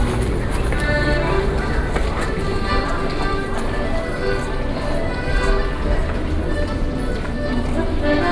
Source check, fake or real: real